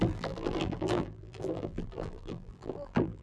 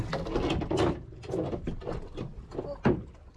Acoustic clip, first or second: second